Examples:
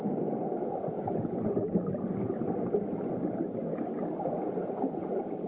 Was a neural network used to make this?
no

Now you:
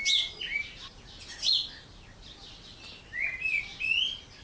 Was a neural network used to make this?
no